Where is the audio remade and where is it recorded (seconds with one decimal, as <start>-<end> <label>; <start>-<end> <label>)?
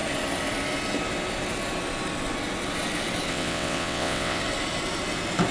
0.0-3.3 recorded; 3.3-4.4 remade; 4.4-5.5 recorded